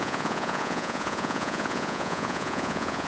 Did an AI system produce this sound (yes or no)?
yes